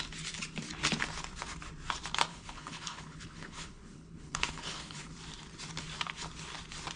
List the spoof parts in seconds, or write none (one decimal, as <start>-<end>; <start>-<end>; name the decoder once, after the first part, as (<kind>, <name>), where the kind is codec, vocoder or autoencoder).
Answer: 2.3-5.1 (codec, HILCodec)